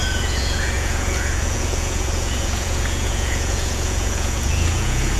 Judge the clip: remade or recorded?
remade